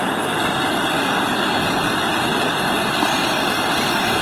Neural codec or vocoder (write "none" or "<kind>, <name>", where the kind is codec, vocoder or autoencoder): none